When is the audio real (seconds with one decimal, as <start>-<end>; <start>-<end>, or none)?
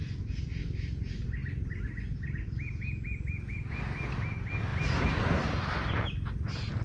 0.0-6.8